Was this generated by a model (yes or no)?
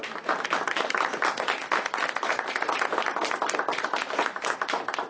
no